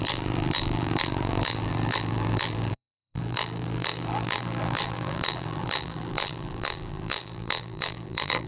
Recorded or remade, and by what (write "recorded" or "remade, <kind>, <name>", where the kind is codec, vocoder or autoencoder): remade, vocoder, BigVGAN v2